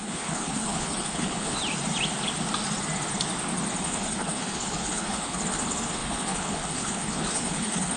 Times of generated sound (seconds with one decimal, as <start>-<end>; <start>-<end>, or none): 0.0-1.6; 3.8-8.0